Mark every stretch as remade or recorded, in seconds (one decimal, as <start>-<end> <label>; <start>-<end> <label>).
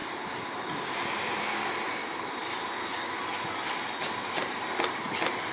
0.0-5.5 recorded